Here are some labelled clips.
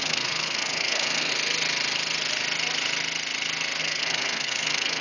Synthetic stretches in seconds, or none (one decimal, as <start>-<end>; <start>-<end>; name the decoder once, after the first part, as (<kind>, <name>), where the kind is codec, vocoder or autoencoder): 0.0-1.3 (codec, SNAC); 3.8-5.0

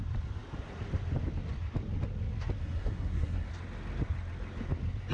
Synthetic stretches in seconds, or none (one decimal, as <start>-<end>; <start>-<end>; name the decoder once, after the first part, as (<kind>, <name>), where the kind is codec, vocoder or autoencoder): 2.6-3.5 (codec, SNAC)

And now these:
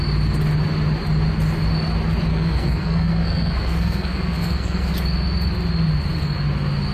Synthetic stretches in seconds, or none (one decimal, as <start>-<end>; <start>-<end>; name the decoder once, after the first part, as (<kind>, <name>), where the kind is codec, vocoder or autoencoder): 2.3-4.9 (codec, SNAC)

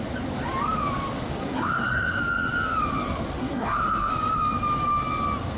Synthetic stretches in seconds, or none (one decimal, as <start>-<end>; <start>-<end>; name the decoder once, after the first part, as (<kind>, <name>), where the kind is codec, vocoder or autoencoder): 1.4-2.2 (codec, SNAC); 3.4-4.1